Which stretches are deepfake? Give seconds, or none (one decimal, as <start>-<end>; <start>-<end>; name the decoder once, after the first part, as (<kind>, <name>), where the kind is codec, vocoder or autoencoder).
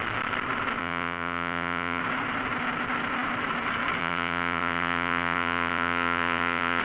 0.8-2.0 (vocoder, HiFi-GAN); 4.0-6.8